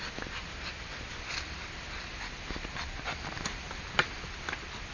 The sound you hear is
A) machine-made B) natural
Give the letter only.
B